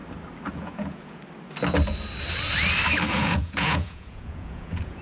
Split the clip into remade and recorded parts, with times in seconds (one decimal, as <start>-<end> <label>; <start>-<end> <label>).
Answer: 0.0-0.5 recorded; 0.5-1.2 remade; 1.2-3.1 recorded; 3.1-5.0 remade